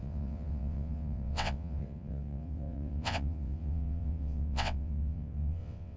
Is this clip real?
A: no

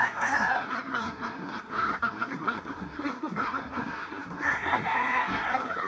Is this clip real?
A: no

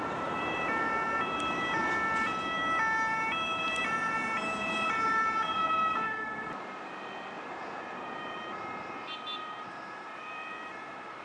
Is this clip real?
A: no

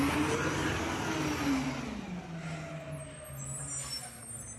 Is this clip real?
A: yes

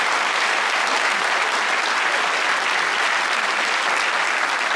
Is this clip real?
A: yes